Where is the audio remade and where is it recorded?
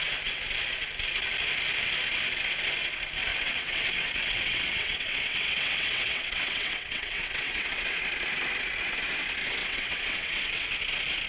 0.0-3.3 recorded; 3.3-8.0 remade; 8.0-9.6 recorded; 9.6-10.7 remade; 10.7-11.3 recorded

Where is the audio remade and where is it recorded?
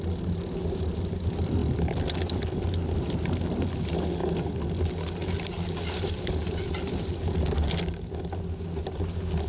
0.0-9.5 recorded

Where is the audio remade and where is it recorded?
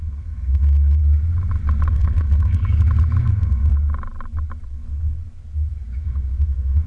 0.0-1.0 remade; 1.0-1.9 recorded; 1.9-2.6 remade; 2.6-3.2 recorded; 3.2-3.7 remade; 3.7-4.7 recorded; 4.7-5.2 remade; 5.2-6.0 recorded; 6.0-6.9 remade